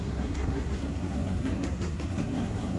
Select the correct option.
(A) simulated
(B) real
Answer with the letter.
A